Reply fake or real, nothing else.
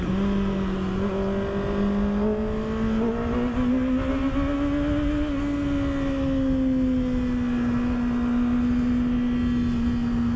real